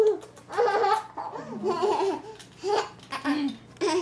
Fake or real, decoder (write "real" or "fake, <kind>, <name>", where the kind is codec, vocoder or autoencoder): real